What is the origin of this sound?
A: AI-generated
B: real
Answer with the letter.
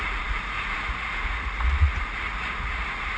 A